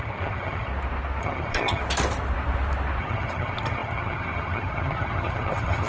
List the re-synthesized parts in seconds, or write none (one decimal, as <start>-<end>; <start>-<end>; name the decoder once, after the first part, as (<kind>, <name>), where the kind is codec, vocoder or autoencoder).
0.0-0.7 (vocoder, HiFi-GAN); 1.2-1.8; 3.0-5.9